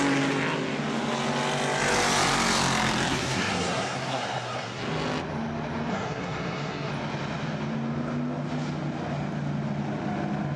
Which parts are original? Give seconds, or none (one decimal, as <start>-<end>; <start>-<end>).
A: 0.0-3.1; 4.8-5.9; 6.9-10.6